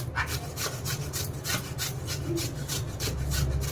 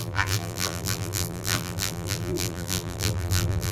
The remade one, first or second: second